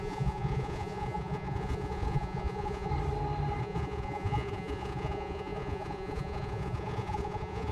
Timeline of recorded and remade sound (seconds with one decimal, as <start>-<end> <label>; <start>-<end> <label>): 0.0-2.9 remade; 2.9-3.6 recorded; 3.6-7.7 remade